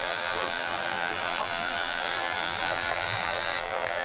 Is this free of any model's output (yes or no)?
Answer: no